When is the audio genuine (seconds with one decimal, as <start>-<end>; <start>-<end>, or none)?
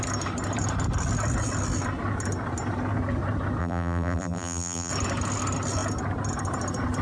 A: 0.0-3.6; 4.9-7.0